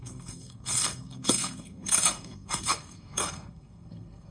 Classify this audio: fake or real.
fake